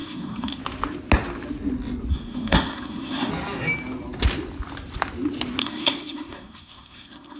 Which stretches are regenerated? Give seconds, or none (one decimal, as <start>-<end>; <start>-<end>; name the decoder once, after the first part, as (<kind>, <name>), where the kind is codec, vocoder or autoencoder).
0.0-0.6 (codec, SNAC); 2.1-3.3; 5.6-7.4